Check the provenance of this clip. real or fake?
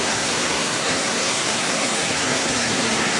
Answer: fake